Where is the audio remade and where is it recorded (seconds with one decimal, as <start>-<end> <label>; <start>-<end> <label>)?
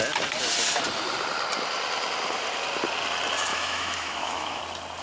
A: 0.0-3.5 recorded; 3.5-4.6 remade; 4.6-5.0 recorded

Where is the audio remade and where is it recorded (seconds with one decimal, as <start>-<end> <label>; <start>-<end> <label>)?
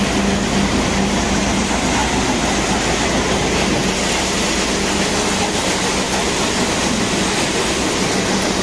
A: 0.0-8.6 recorded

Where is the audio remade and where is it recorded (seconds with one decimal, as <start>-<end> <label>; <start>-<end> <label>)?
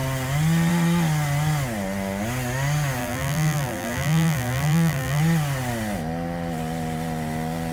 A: 0.0-3.0 recorded; 3.0-5.2 remade; 5.2-7.7 recorded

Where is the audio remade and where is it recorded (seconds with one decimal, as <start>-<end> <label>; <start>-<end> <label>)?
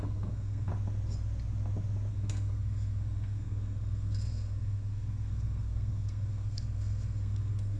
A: 0.0-0.7 remade; 0.7-2.1 recorded; 2.1-7.8 remade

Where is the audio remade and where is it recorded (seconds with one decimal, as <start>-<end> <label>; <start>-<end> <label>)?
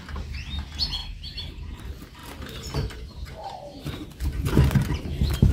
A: 0.0-1.0 recorded; 1.0-1.8 remade; 1.8-2.2 recorded; 2.2-5.5 remade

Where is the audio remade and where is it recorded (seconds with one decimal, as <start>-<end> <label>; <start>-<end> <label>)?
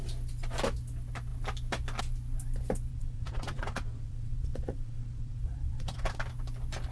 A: 0.0-2.9 recorded; 2.9-6.2 remade; 6.2-6.9 recorded